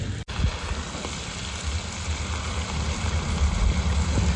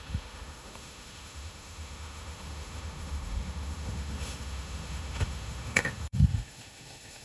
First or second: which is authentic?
first